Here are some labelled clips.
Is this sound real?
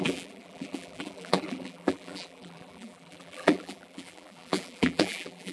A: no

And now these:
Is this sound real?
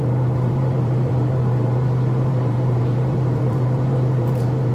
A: no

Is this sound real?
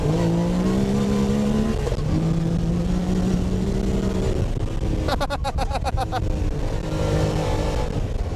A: yes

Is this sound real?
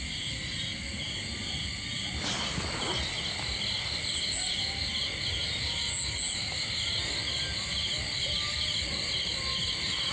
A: yes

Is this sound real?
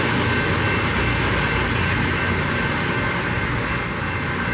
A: yes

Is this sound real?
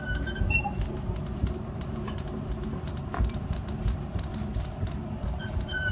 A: no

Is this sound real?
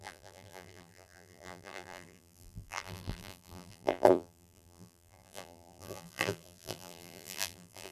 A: no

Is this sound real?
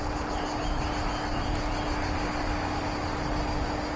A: yes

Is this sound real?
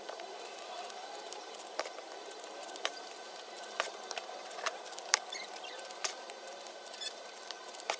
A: no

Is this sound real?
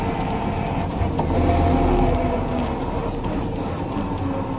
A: yes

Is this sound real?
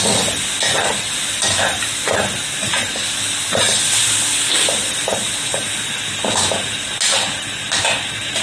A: yes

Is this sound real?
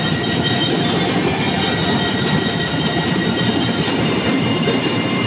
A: yes